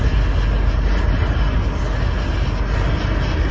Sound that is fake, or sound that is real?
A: real